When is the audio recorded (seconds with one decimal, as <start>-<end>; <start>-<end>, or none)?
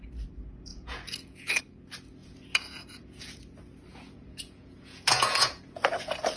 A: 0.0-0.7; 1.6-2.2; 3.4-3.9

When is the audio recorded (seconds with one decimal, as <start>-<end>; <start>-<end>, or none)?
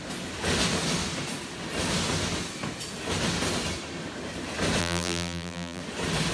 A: 0.0-4.8; 5.8-6.3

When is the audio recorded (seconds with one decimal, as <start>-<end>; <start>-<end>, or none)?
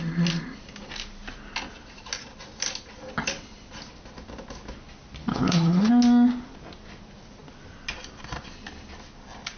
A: 0.0-5.2; 5.9-9.6